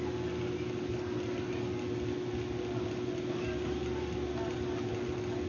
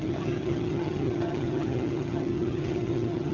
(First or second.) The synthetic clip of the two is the second